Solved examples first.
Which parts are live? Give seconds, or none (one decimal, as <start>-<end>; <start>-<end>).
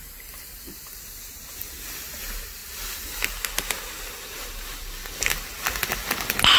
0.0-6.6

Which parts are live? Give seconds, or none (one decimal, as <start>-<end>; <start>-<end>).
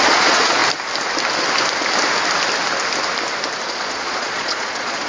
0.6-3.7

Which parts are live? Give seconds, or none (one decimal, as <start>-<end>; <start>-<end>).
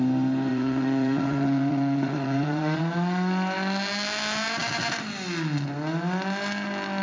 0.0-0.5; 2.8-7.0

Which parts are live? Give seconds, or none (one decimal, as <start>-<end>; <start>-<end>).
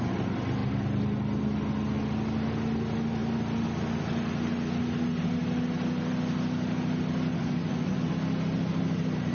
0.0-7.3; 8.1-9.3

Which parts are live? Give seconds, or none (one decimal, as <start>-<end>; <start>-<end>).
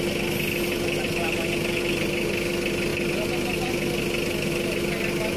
0.0-5.4